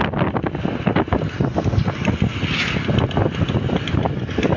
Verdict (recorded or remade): recorded